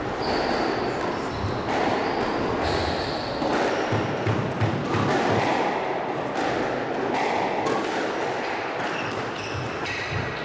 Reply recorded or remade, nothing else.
recorded